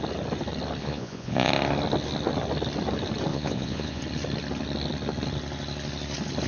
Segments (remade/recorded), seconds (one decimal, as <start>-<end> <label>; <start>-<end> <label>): 0.0-0.8 recorded; 0.8-1.5 remade; 1.5-3.3 recorded; 3.3-4.0 remade; 4.0-6.5 recorded